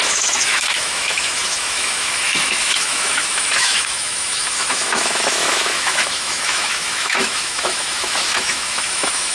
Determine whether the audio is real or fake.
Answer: fake